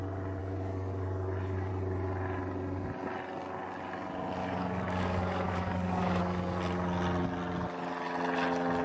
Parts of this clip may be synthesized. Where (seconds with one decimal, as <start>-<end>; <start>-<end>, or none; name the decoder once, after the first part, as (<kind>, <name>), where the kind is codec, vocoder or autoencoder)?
0.4-1.7 (codec, DAC); 4.4-6.2